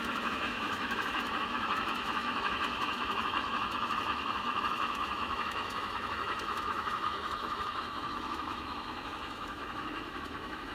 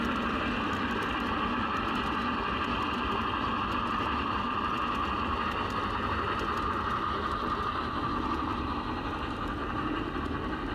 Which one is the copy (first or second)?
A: first